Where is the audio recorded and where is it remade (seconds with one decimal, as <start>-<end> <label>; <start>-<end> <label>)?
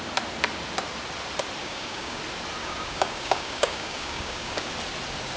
0.0-1.6 recorded; 1.6-2.2 remade; 2.2-2.6 recorded; 2.6-4.7 remade; 4.7-5.4 recorded